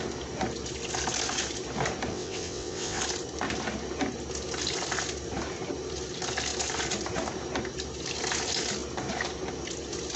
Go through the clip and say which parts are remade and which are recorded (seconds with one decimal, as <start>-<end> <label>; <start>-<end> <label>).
0.0-2.1 recorded; 2.1-3.0 remade; 3.0-10.2 recorded